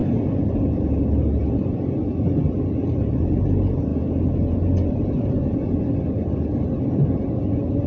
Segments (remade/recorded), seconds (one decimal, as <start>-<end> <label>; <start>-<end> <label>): 0.0-7.9 recorded